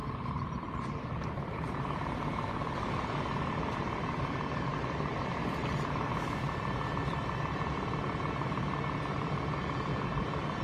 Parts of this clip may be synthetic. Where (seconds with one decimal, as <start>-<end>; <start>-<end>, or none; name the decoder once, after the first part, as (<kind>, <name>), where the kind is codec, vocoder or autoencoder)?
0.0-2.5 (vocoder, BigVGAN v2); 4.7-5.3